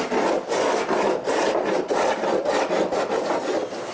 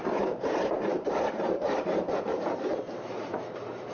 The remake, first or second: second